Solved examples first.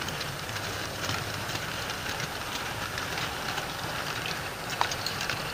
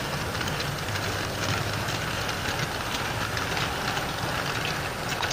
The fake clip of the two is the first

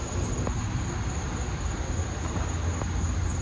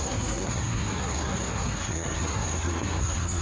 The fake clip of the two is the second